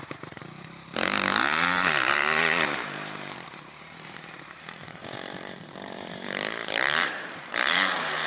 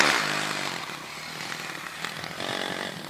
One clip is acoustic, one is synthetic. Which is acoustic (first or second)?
second